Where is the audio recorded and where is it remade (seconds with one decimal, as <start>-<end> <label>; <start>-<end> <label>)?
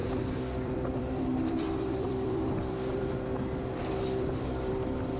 0.0-3.1 remade; 3.1-5.2 recorded